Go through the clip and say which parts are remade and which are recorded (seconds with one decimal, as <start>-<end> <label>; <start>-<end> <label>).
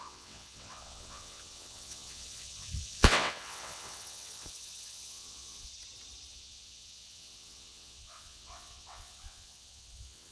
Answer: 0.0-5.7 remade; 5.7-6.3 recorded; 6.3-10.3 remade